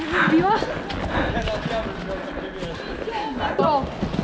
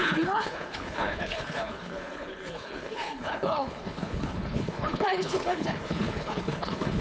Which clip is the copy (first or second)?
second